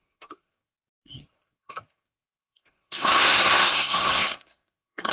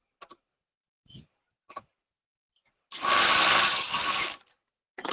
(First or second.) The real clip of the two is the second